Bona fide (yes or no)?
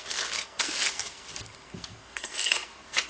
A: no